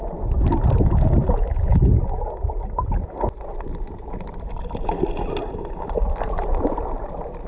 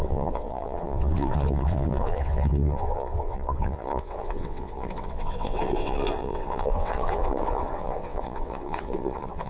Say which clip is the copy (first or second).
second